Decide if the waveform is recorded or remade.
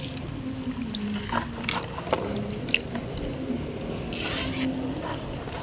recorded